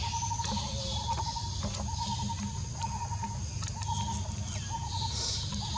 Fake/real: real